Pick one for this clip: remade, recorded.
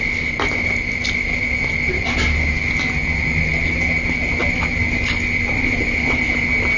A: recorded